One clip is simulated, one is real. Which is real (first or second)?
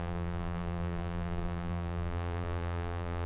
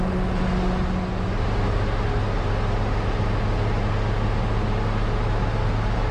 second